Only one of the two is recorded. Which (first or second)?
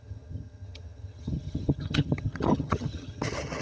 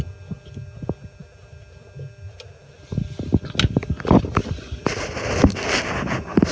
second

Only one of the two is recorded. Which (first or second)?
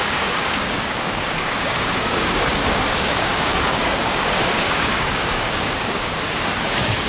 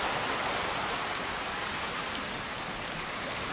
second